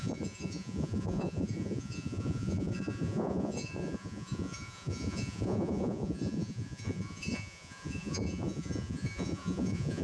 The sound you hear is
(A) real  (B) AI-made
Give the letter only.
B